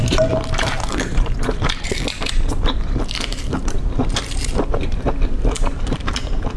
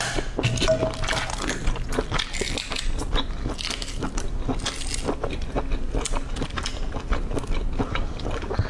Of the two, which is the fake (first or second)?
first